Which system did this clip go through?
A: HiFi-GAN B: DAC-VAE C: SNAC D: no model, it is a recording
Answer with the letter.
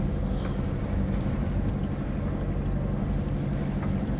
D